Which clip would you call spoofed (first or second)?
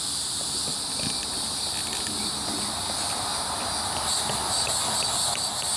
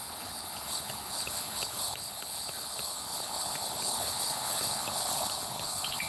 second